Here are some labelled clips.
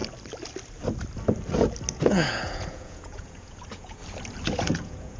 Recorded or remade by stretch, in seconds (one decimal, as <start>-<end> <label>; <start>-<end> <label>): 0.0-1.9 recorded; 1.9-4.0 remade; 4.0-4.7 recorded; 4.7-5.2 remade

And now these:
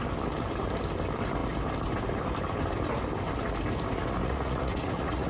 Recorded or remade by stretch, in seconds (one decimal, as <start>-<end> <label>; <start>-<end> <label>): 0.0-4.2 recorded; 4.2-5.3 remade

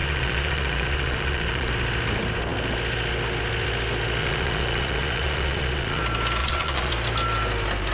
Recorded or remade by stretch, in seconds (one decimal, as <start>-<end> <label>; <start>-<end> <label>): 0.0-1.7 remade; 1.7-4.2 recorded; 4.2-6.0 remade; 6.0-6.4 recorded; 6.4-6.9 remade; 6.9-7.9 recorded

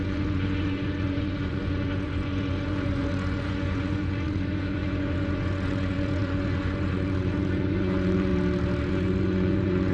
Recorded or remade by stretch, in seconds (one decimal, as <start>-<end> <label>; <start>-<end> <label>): 0.0-8.3 remade; 8.3-8.9 recorded; 8.9-9.9 remade

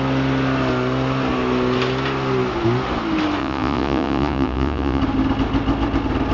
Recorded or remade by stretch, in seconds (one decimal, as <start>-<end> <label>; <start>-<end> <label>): 0.0-3.4 recorded; 3.4-5.0 remade; 5.0-6.3 recorded